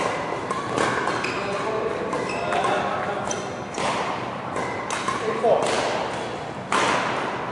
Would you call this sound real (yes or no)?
yes